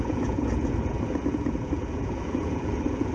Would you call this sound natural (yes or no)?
no